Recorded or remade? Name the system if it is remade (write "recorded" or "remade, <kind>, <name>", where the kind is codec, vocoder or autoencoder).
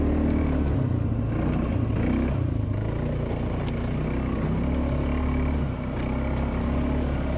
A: recorded